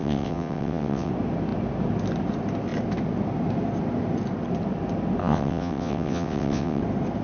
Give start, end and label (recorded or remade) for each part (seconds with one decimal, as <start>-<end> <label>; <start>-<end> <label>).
0.0-1.1 remade; 1.1-5.2 recorded; 5.2-6.8 remade; 6.8-7.2 recorded